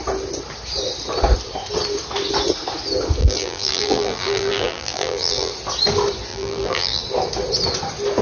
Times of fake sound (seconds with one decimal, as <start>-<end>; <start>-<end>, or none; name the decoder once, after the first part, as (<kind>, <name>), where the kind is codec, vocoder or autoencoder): 3.2-5.5 (vocoder, BigVGAN v2); 6.3-7.0